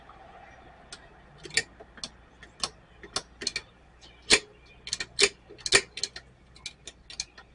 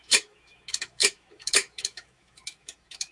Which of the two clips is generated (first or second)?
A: second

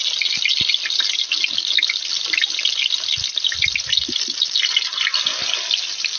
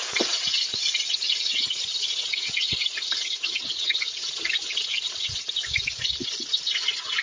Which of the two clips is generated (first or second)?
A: second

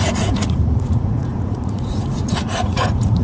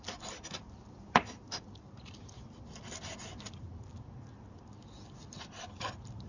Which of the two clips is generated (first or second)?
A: first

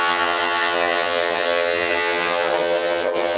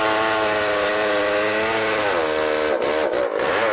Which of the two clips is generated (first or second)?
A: first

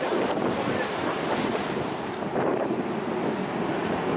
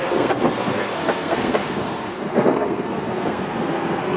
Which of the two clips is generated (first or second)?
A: second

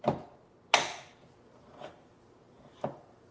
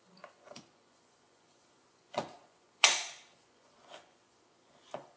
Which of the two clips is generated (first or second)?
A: second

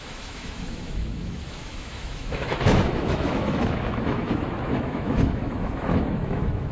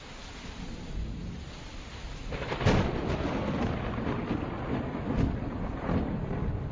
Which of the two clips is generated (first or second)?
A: first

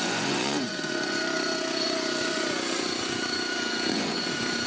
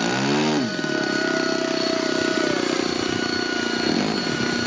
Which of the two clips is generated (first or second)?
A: first